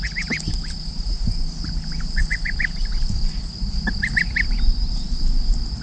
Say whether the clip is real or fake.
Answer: real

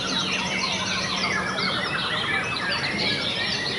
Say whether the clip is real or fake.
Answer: real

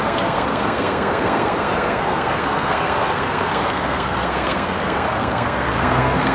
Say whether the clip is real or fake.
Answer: fake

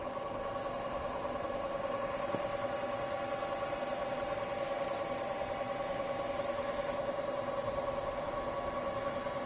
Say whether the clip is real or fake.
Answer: real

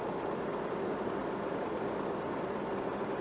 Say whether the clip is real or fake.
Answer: real